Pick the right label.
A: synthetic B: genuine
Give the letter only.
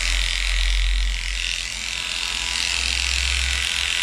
B